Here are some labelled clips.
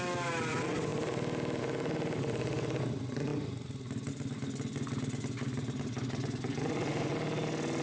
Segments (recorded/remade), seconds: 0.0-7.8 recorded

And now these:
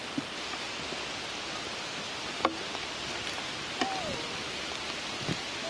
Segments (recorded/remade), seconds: 0.0-5.7 recorded